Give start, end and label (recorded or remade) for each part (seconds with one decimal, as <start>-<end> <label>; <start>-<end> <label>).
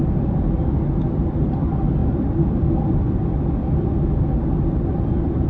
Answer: 0.0-5.5 recorded